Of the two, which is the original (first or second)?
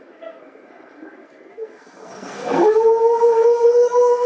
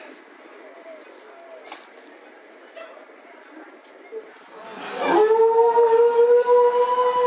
second